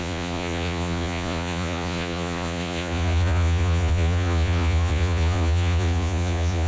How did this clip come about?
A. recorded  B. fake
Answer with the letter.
B